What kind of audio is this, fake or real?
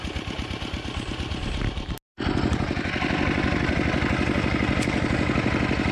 real